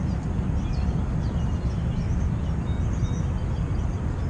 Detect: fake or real real